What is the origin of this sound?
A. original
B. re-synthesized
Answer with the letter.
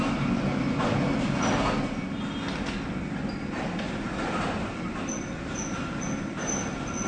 A